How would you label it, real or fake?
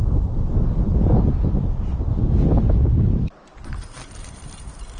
real